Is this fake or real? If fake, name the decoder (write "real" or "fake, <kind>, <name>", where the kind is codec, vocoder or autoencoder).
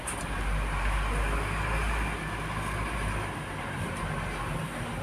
real